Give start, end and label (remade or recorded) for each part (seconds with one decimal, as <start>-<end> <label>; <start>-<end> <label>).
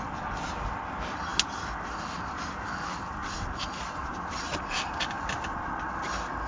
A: 0.0-3.2 recorded; 3.2-4.6 remade; 4.6-6.5 recorded